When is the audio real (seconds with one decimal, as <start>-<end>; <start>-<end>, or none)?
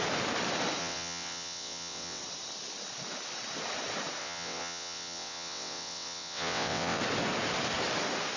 0.0-0.8; 2.2-4.2; 7.0-8.4